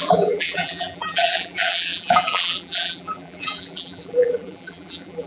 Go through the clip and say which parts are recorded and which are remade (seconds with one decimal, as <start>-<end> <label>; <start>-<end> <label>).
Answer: 0.0-5.3 remade